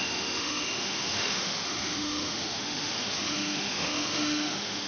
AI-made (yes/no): yes